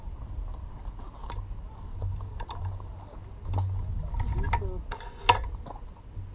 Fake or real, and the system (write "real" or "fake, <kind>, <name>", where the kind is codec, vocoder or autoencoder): real